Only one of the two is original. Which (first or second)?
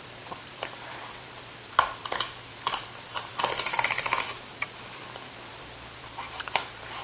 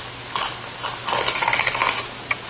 second